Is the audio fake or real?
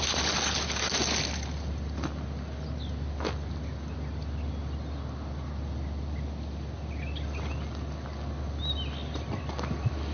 real